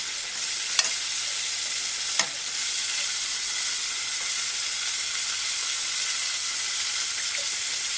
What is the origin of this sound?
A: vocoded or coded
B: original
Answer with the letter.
B